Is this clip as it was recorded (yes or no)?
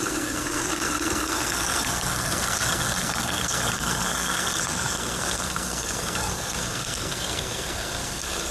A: no